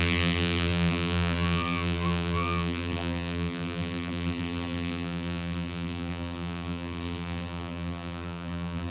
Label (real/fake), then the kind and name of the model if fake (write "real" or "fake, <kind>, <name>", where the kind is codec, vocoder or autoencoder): fake, vocoder, BigVGAN v2